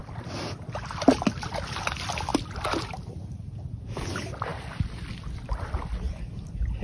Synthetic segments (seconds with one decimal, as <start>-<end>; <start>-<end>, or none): none